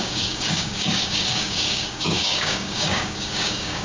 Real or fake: fake